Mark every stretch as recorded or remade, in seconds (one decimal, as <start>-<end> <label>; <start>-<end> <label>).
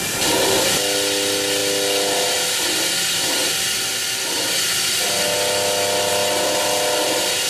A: 0.0-7.5 recorded